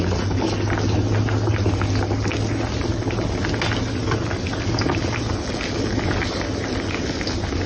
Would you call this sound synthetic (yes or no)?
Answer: no